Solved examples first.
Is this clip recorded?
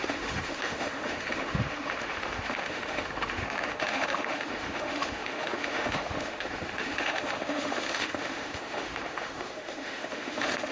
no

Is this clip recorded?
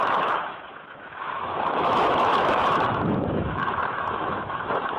no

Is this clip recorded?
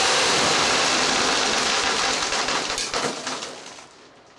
yes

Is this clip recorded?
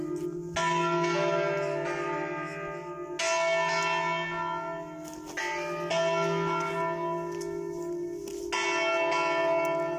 yes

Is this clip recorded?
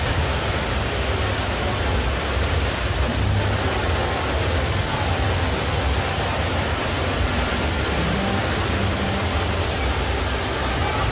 yes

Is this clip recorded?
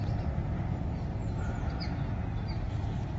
yes